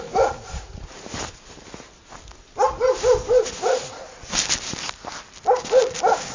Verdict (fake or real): real